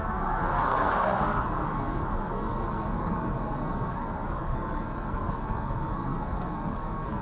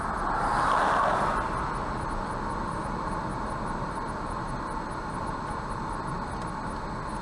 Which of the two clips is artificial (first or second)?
first